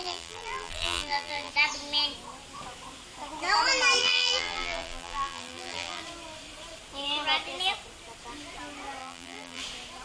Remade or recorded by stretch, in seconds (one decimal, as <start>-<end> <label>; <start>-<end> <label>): 0.0-1.5 remade; 1.5-4.0 recorded; 4.0-6.0 remade; 6.0-9.0 recorded; 9.0-9.6 remade; 9.6-10.0 recorded